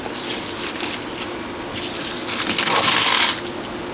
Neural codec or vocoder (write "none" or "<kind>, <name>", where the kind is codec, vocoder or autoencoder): none